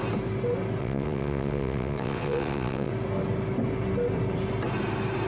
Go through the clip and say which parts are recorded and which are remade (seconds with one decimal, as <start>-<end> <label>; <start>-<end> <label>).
0.0-0.8 recorded; 0.8-2.9 remade; 2.9-5.3 recorded